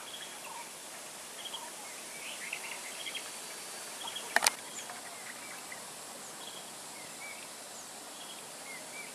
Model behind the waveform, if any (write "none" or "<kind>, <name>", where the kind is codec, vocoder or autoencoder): vocoder, BigVGAN v2